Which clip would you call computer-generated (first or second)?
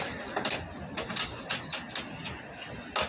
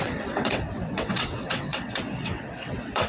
second